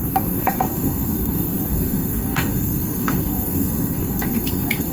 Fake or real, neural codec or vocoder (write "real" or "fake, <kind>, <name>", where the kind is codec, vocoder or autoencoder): fake, codec, SNAC